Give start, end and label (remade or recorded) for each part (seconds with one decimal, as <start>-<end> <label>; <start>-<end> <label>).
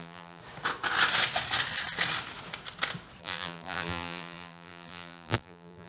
0.0-0.4 remade; 0.4-3.2 recorded; 3.2-5.9 remade